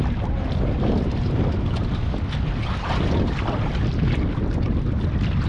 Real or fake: real